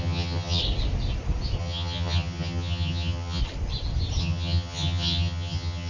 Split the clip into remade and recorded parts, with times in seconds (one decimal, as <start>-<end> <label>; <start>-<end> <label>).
0.0-0.6 remade; 0.6-1.6 recorded; 1.6-3.4 remade; 3.4-4.2 recorded; 4.2-5.9 remade